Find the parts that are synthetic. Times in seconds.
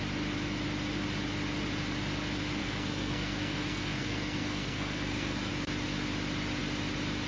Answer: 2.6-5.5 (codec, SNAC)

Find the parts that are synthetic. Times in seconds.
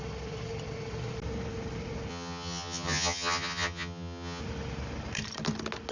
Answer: 2.1-4.4 (vocoder, HiFi-GAN)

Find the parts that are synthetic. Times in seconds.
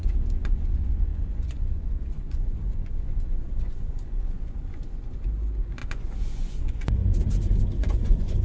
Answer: 0.0-7.0 (vocoder, Vocos); 7.8-8.4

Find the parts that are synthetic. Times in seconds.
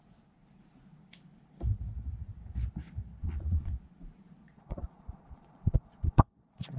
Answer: 3.2-3.7 (vocoder, Vocos); 4.4-6.8